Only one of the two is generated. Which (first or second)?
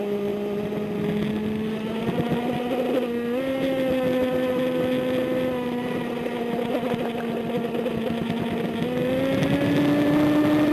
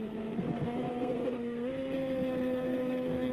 second